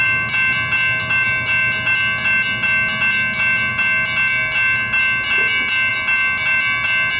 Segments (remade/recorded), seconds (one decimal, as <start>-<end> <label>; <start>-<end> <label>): 0.0-7.2 recorded